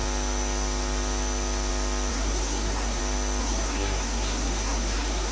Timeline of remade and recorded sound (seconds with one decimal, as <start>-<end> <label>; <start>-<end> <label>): 0.0-2.1 recorded; 2.1-3.0 remade; 3.0-3.4 recorded; 3.4-5.3 remade